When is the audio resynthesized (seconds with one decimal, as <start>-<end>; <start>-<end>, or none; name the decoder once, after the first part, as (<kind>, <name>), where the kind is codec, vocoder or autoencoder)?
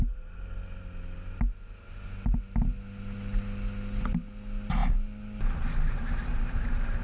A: none